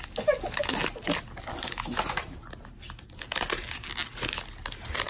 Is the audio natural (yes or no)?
yes